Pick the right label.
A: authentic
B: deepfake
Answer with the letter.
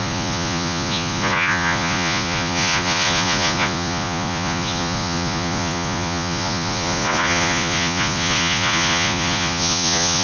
B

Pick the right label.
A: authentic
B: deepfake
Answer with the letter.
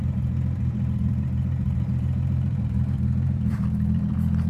B